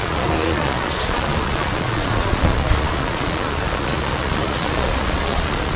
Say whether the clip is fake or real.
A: fake